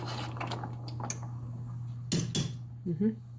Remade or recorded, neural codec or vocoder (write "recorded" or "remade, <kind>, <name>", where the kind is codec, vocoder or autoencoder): recorded